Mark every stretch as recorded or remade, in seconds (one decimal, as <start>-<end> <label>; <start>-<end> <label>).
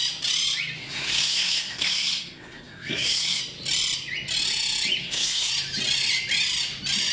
0.0-0.8 recorded; 0.8-3.4 remade; 3.4-5.0 recorded; 5.0-5.5 remade; 5.5-7.1 recorded